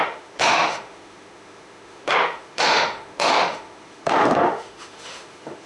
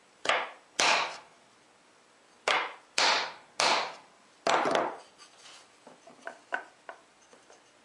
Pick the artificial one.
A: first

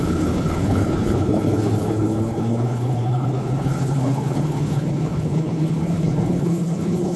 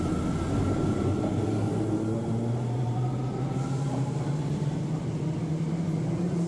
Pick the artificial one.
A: first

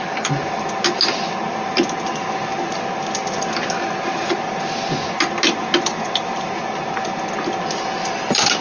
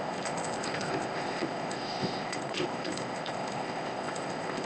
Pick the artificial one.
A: second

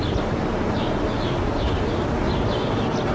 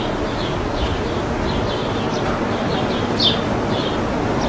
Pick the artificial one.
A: first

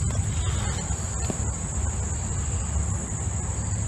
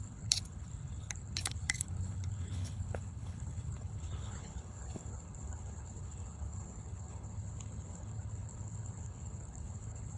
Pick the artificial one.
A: second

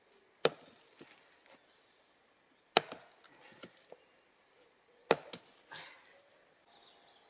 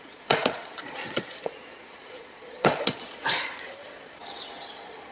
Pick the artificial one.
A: second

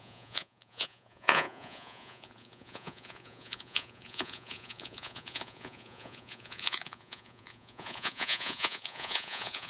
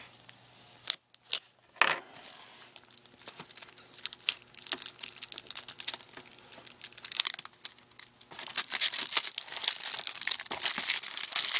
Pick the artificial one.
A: first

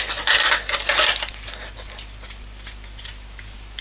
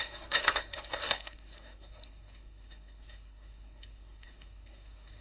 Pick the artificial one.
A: second